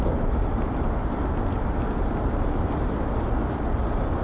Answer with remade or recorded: recorded